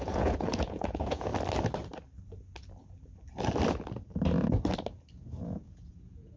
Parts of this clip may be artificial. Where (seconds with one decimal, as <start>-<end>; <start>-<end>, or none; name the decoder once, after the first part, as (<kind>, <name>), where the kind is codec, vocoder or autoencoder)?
0.0-1.3 (vocoder, Vocos); 5.1-6.4